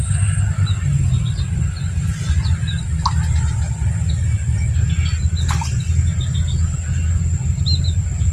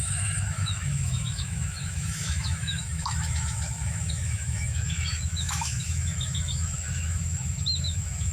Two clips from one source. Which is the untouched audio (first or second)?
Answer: first